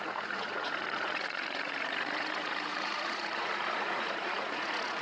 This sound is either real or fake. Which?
fake